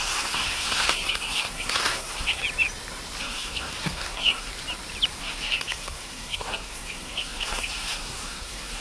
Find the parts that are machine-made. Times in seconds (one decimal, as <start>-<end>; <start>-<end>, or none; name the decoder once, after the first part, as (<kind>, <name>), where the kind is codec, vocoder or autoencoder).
0.0-2.4 (codec, SNAC); 3.2-4.5; 5.2-8.8